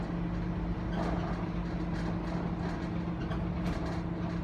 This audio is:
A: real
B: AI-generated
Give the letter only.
A